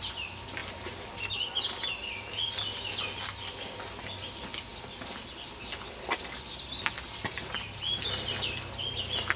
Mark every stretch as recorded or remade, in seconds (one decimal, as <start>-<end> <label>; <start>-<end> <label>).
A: 0.0-9.4 recorded